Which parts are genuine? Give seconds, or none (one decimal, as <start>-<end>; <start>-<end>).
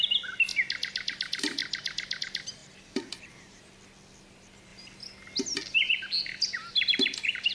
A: 0.0-1.6; 2.2-2.6; 3.6-7.5